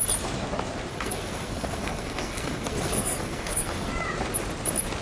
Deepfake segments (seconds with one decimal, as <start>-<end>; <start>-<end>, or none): 0.9-3.9